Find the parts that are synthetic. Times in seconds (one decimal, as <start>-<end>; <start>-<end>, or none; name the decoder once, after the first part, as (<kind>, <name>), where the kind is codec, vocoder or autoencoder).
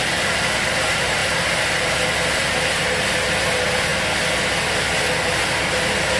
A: none